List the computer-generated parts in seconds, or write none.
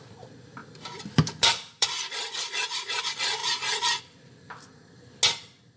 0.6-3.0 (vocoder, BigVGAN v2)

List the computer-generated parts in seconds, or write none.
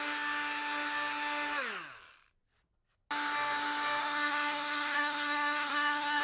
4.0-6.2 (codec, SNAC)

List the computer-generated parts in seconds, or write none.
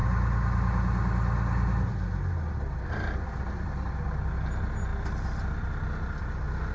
none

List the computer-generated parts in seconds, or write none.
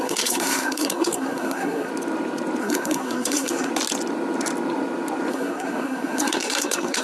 0.0-1.9 (codec, SNAC); 2.6-3.7; 5.3-7.0